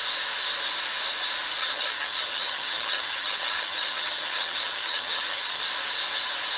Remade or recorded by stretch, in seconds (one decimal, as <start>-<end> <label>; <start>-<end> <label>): 0.0-1.6 recorded; 1.6-5.6 remade; 5.6-6.6 recorded